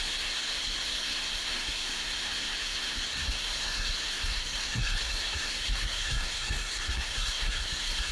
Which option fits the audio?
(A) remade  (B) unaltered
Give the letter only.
A